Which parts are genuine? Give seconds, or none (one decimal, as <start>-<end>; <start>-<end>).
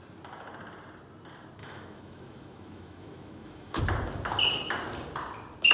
0.0-1.6; 3.8-5.7